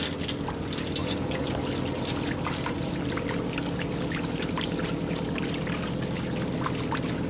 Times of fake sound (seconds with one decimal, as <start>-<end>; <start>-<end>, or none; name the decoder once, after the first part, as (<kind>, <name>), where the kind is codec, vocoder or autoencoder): 1.0-1.5 (vocoder, Vocos)